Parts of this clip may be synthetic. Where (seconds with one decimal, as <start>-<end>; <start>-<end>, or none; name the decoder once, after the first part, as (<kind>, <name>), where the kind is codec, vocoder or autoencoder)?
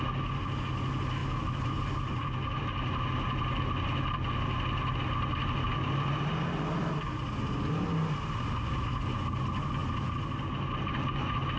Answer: none